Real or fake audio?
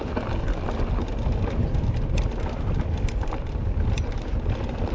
real